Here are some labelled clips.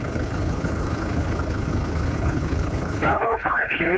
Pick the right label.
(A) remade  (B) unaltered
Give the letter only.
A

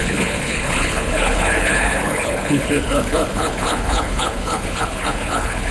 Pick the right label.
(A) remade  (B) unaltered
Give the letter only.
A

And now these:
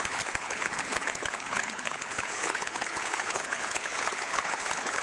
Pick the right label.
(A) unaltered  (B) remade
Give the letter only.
B